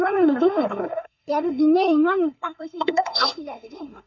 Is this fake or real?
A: fake